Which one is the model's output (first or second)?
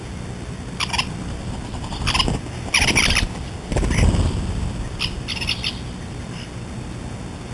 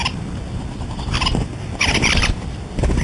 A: second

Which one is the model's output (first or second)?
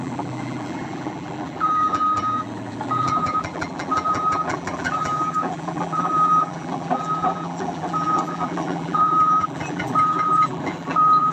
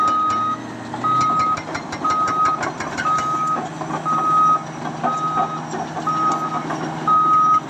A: first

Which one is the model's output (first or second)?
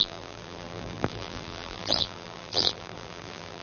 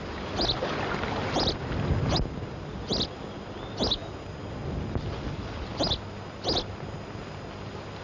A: first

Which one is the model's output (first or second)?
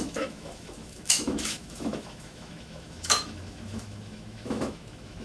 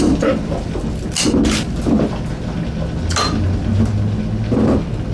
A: first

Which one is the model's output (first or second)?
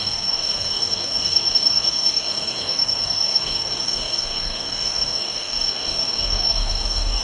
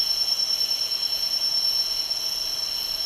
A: first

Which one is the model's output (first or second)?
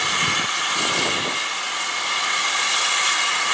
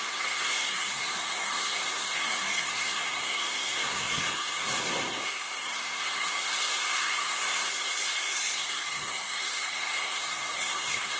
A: second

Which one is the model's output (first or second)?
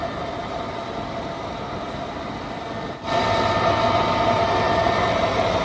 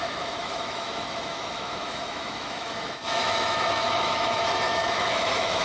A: second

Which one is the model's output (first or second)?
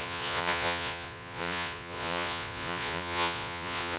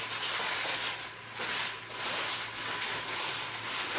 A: first